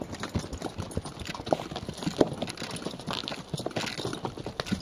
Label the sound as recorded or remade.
recorded